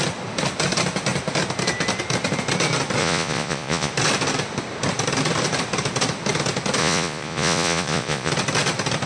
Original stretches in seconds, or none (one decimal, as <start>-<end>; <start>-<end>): 0.0-3.0; 3.9-6.8; 8.3-9.1